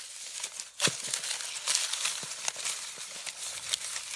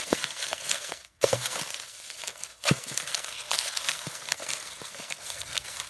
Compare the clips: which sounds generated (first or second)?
second